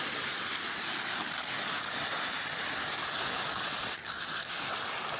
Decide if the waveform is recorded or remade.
recorded